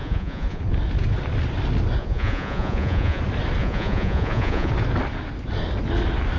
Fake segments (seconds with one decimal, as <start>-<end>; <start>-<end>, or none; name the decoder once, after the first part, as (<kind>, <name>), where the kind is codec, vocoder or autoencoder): 0.0-0.6 (vocoder, Vocos); 2.0-3.2; 3.6-4.7